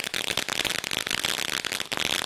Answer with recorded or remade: recorded